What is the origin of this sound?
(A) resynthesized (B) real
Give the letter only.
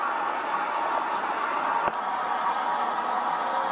B